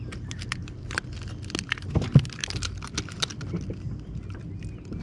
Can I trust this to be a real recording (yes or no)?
yes